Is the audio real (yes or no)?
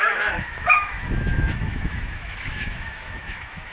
no